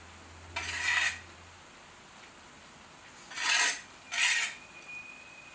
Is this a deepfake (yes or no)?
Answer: no